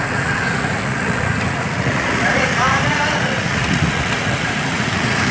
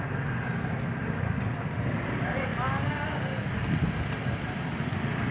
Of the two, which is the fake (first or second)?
first